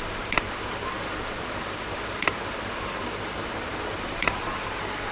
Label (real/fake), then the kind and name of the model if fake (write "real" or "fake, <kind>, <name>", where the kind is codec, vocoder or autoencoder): fake, vocoder, BigVGAN v2